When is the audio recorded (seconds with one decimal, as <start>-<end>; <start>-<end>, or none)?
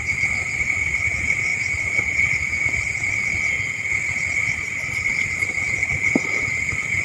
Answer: 0.0-1.5; 2.7-4.4; 5.5-7.0